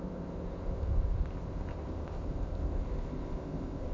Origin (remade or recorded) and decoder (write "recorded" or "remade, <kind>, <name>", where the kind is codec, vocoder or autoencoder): remade, codec, ZipCodec